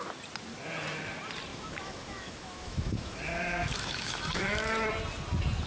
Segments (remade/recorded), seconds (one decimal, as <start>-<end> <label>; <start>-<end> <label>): 0.0-1.5 recorded; 1.5-4.9 remade; 4.9-5.7 recorded